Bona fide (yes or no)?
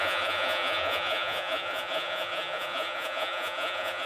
no